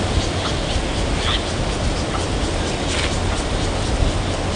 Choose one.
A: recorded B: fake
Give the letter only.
A